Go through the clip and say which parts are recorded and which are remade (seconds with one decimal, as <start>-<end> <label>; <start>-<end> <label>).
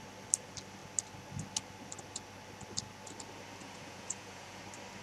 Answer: 0.0-3.6 recorded; 3.6-4.6 remade; 4.6-5.0 recorded